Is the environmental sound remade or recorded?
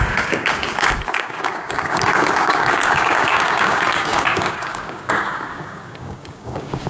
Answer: remade